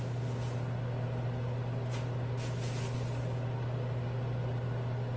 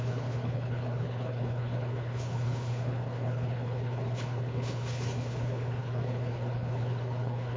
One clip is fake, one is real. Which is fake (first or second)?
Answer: second